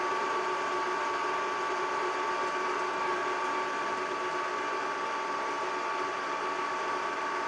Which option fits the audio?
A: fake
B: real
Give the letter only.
B